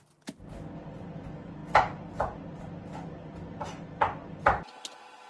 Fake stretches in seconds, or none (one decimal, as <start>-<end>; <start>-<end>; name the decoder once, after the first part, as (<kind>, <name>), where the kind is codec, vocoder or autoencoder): none